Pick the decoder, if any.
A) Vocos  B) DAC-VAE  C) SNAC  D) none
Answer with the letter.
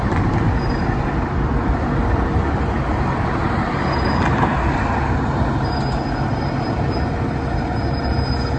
D